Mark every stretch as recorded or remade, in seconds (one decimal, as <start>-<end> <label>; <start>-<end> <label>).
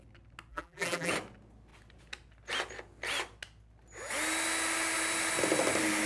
0.0-0.5 recorded; 0.5-1.1 remade; 1.1-6.1 recorded